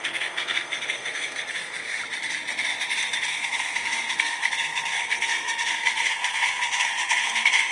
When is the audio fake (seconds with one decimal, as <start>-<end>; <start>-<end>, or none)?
0.0-2.0; 3.3-7.7